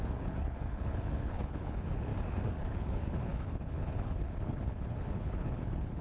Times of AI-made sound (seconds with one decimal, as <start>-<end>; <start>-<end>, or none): 0.0-2.1; 2.6-6.0